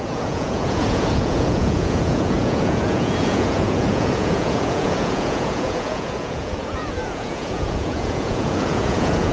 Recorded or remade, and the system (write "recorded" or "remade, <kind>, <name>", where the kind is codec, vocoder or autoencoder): remade, vocoder, Vocos